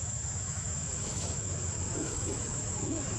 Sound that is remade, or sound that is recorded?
remade